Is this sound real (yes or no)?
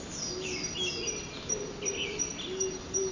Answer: yes